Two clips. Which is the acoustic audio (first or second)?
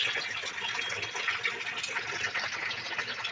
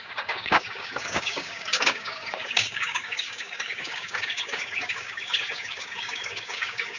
first